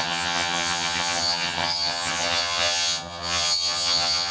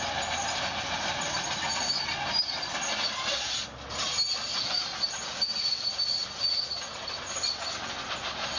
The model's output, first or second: first